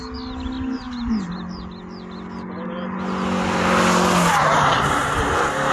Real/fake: real